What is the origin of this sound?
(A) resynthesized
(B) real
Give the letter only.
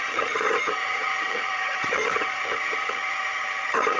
A